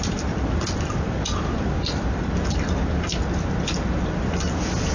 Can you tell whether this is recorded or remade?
recorded